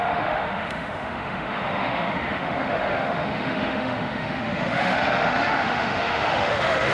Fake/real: fake